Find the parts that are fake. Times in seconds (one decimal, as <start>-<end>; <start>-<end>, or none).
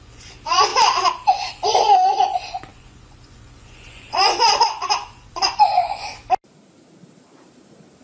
0.0-0.7; 1.5-6.2